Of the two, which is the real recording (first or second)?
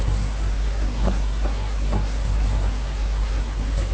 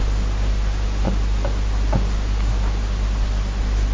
second